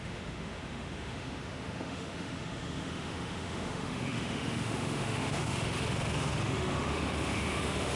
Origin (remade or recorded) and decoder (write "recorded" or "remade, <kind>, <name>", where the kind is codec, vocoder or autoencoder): remade, autoencoder, DAC-VAE